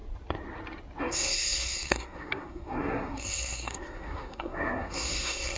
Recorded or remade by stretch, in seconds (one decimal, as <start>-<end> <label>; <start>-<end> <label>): 0.0-1.0 recorded; 1.0-5.6 remade